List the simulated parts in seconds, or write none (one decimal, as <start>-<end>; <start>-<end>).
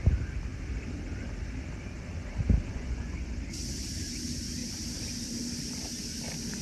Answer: 2.7-3.3